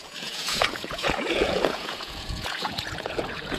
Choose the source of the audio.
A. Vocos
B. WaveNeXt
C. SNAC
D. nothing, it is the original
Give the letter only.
A